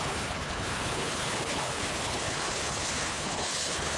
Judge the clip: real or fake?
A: fake